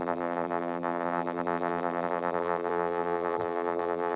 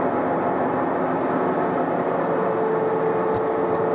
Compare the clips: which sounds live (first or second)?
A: second